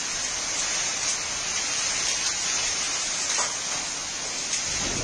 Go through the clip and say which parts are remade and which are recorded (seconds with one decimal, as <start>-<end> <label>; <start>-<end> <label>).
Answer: 0.0-5.0 recorded